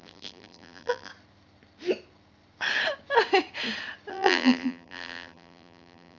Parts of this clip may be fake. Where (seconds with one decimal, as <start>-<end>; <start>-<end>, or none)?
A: 0.0-1.1; 4.1-6.2